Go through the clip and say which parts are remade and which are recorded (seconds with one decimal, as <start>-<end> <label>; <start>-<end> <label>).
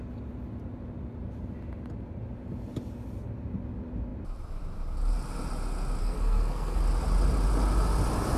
0.0-6.0 recorded; 6.0-6.8 remade; 6.8-8.4 recorded